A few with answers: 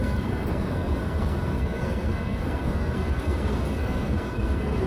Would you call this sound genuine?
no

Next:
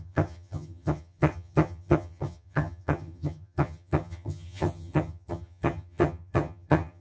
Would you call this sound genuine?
no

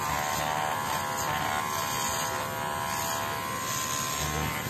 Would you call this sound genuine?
yes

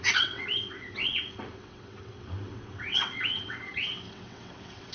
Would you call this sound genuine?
no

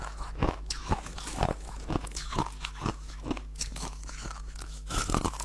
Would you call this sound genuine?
no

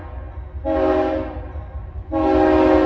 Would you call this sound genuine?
yes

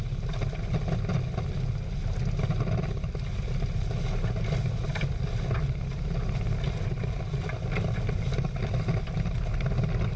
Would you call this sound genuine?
yes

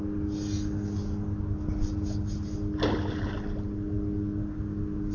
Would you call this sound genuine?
yes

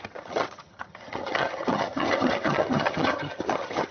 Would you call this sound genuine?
no